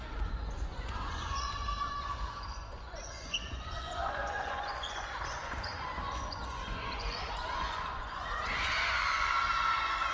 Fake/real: fake